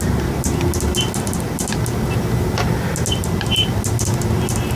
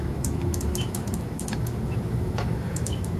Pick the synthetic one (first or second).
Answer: second